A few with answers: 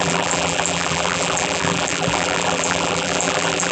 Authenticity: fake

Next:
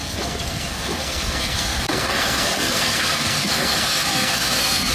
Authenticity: fake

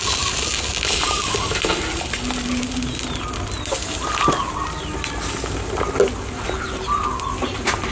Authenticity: real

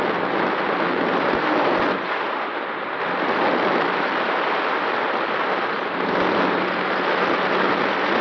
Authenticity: real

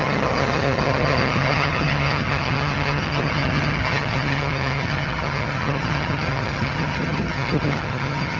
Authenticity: fake